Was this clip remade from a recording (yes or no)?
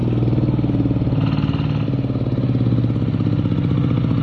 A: no